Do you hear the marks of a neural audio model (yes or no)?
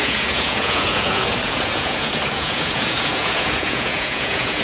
yes